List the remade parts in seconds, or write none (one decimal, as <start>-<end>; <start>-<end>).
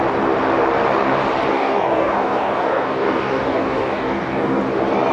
1.5-4.6